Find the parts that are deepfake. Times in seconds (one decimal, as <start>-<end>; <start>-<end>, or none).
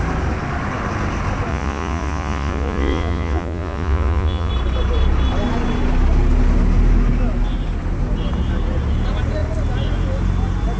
1.5-4.5